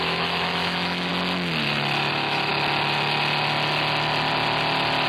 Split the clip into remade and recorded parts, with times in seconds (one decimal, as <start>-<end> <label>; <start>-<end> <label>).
0.0-1.1 remade; 1.1-2.1 recorded; 2.1-2.5 remade; 2.5-5.1 recorded